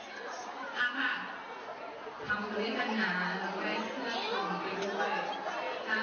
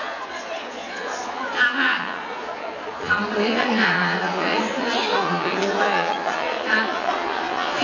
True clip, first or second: first